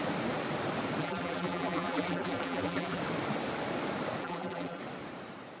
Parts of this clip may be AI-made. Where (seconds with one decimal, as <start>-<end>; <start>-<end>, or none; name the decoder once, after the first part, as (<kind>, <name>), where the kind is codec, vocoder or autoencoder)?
1.0-3.0 (vocoder, BigVGAN v2); 4.2-4.8